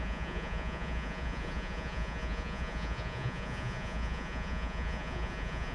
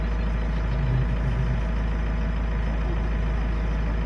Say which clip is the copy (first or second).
first